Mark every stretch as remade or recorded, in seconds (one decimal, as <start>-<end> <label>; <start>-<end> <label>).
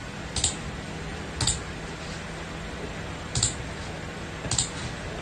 0.0-5.2 recorded